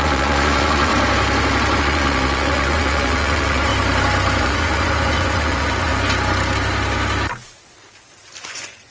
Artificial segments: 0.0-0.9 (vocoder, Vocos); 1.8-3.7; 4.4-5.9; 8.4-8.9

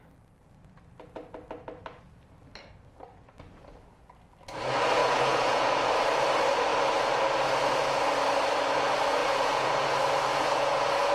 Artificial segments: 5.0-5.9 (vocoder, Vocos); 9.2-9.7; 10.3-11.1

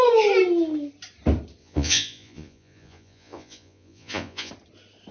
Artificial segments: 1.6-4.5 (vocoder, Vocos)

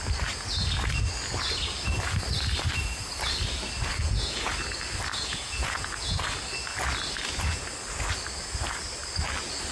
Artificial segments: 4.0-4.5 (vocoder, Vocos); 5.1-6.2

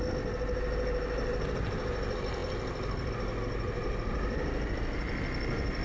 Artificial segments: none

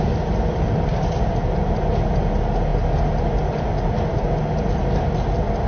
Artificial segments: none